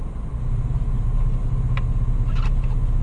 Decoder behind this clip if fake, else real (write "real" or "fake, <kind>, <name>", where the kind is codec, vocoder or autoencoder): real